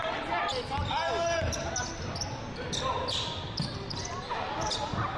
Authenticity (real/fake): real